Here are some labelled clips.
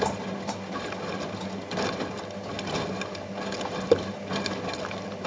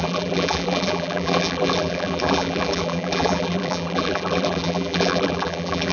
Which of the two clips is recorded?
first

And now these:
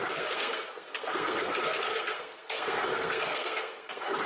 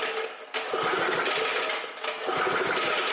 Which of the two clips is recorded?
second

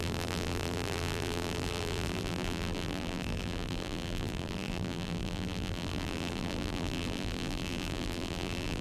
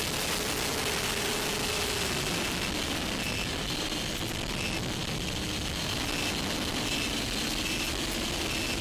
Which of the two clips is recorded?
second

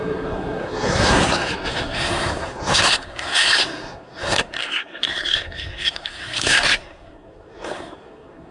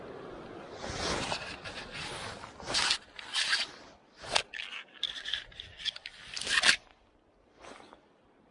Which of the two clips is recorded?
second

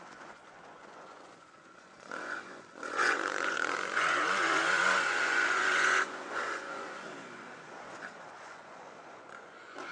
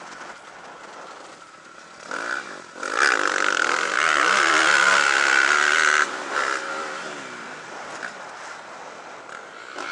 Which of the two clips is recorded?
second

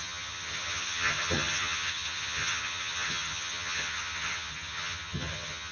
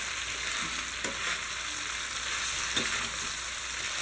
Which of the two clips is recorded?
second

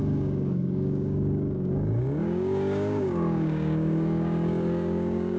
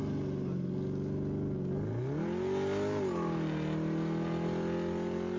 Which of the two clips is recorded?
second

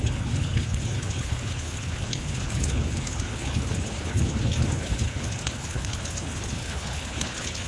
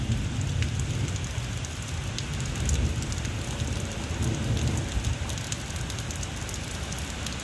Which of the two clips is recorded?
second